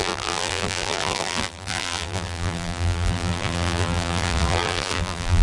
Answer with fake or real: fake